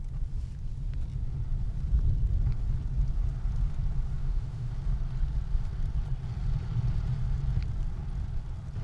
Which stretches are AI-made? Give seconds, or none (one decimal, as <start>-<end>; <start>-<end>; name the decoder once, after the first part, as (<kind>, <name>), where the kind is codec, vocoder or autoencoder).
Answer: 4.2-4.7 (autoencoder, DAC-VAE)